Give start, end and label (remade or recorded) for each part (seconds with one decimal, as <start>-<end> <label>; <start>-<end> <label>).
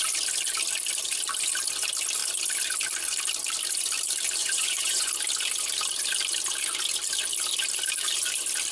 0.0-4.4 recorded; 4.4-5.1 remade; 5.1-8.7 recorded